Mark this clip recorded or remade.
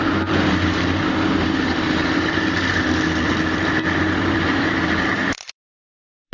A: remade